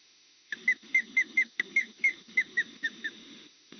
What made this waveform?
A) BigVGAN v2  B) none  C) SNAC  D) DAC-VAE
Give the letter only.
D